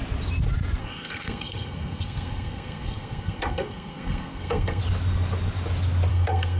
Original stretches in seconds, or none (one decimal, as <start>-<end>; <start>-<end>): 0.0-0.8; 4.8-6.1